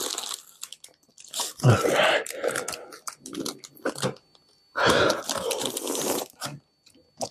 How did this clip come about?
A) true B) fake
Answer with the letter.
A